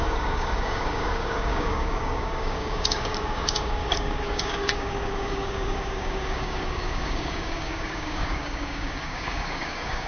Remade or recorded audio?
remade